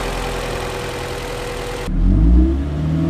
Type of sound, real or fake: real